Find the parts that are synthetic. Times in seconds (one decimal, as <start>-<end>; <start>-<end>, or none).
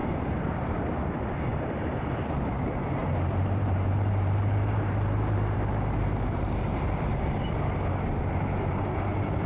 0.0-1.0; 3.0-7.6